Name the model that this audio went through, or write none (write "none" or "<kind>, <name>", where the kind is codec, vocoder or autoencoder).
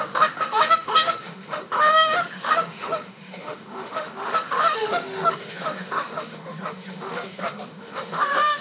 autoencoder, DAC-VAE